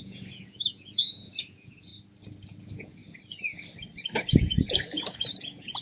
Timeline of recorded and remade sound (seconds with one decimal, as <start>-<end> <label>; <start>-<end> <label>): 0.0-1.9 remade; 1.9-2.6 recorded; 2.6-3.0 remade; 3.0-4.4 recorded; 4.4-5.8 remade